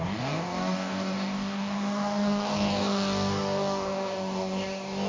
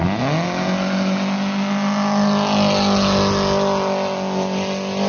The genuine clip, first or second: second